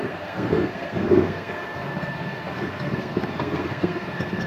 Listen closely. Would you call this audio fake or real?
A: fake